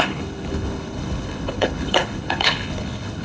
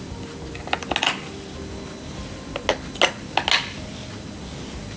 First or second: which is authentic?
second